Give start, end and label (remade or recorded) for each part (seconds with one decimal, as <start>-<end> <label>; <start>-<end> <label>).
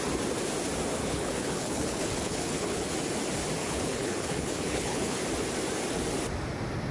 0.0-1.0 recorded; 1.0-2.9 remade; 2.9-3.6 recorded; 3.6-5.2 remade; 5.2-6.9 recorded